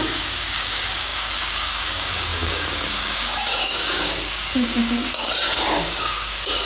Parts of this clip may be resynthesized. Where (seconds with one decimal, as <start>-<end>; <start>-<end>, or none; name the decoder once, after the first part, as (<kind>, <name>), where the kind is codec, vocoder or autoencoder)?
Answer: 0.0-6.7 (codec, DAC)

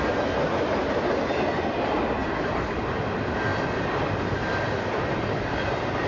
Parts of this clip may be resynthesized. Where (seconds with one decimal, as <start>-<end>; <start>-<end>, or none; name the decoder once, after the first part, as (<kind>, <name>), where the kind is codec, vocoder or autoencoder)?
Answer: 2.2-2.8 (vocoder, BigVGAN v2); 3.5-5.0

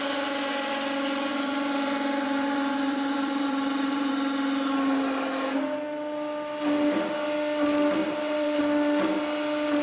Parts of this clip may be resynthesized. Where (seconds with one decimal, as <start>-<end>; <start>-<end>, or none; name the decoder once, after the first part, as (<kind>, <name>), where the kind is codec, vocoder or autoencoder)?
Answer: 1.3-4.1 (vocoder, BigVGAN v2); 8.0-8.6

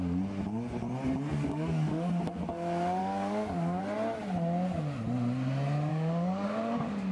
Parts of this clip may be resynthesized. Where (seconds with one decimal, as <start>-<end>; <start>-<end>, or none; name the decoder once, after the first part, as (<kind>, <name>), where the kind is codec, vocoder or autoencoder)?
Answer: 1.3-2.1 (codec, DAC); 3.0-3.8; 5.9-7.1

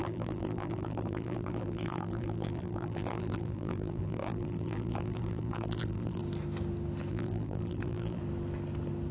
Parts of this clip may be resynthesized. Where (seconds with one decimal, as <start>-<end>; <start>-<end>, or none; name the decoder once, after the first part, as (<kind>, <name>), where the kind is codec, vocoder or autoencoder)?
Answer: 0.0-6.2 (vocoder, BigVGAN v2); 7.1-8.2